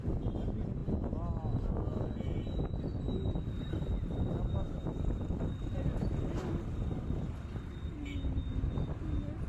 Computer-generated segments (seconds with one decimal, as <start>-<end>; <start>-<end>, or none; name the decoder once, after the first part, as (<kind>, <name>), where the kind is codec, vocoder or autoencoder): none